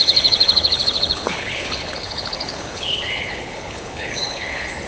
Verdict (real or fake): fake